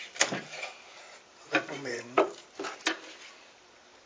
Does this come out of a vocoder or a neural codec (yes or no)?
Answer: yes